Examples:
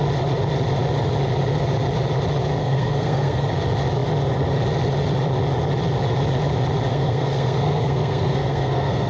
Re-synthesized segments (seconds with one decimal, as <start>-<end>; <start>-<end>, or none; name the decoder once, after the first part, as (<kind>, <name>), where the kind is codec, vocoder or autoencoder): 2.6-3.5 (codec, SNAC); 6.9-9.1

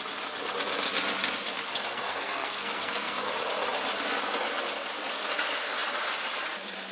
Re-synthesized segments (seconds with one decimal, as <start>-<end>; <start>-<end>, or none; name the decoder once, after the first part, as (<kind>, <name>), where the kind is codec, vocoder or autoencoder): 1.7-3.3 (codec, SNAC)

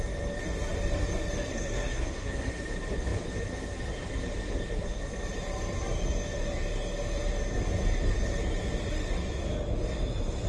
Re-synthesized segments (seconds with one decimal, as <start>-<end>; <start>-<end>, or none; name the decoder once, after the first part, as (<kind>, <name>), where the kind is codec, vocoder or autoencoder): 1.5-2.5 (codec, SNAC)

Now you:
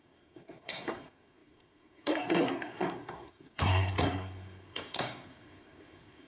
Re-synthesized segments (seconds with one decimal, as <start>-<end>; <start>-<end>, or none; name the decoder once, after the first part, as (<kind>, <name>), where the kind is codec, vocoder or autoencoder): 0.0-6.3 (codec, SNAC)

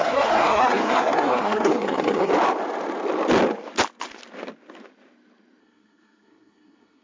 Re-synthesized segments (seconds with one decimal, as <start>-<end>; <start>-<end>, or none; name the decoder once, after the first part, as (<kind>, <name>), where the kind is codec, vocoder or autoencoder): 0.0-2.3 (codec, SNAC); 5.6-7.0

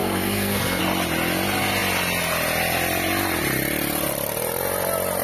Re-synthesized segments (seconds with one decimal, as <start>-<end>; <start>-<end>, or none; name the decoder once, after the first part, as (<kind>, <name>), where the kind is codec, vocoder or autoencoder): 0.0-0.8 (codec, SNAC)

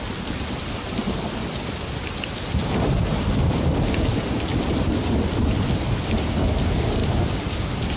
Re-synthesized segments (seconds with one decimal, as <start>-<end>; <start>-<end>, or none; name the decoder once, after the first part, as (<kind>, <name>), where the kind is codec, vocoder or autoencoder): none